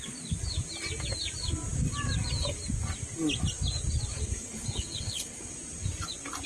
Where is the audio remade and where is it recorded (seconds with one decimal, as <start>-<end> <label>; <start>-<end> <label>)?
0.0-4.1 recorded; 4.1-5.5 remade; 5.5-6.5 recorded